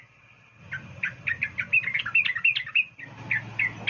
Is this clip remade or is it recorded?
recorded